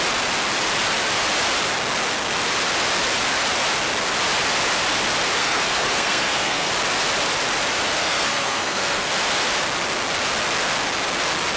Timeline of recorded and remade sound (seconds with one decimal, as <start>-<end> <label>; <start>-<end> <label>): 0.0-5.4 recorded; 5.4-6.7 remade; 6.7-8.0 recorded; 8.0-9.1 remade; 9.1-11.6 recorded